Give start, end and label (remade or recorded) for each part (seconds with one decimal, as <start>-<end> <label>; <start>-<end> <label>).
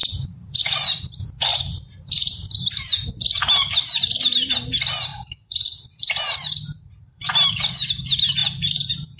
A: 0.0-0.6 remade; 0.6-1.5 recorded; 1.5-3.1 remade; 3.1-5.1 recorded; 5.1-7.3 remade; 7.3-8.4 recorded; 8.4-9.2 remade